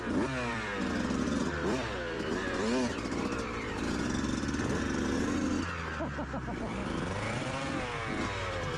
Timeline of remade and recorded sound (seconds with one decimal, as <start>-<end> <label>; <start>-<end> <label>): 0.0-0.5 recorded; 0.5-5.3 remade; 5.3-6.8 recorded; 6.8-7.4 remade; 7.4-8.8 recorded